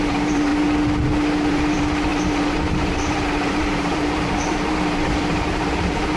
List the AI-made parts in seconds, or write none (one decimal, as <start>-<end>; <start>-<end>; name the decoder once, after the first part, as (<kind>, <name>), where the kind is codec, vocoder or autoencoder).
0.0-0.5 (vocoder, BigVGAN v2); 1.5-6.2